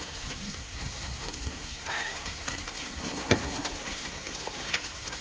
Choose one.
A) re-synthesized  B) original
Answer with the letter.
A